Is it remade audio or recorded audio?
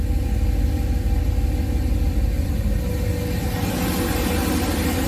recorded